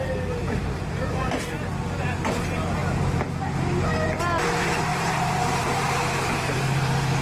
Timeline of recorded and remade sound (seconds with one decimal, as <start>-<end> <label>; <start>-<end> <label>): 0.0-0.4 recorded; 0.4-1.7 remade; 1.7-4.9 recorded; 4.9-7.2 remade